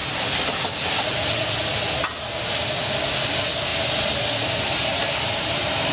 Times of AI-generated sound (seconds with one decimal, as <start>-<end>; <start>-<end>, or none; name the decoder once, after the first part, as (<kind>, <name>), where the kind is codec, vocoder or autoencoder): none